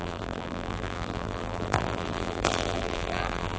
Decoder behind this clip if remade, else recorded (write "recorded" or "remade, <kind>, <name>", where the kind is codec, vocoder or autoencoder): remade, vocoder, BigVGAN v2